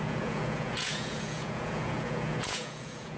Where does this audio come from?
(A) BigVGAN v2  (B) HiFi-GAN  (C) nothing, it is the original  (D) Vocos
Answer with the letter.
D